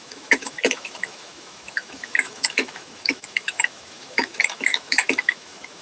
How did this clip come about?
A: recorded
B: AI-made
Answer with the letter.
B